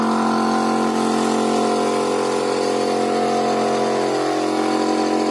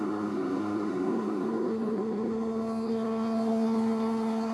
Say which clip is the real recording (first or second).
first